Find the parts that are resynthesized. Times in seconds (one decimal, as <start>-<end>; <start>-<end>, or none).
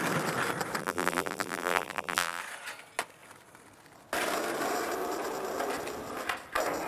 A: 0.8-2.4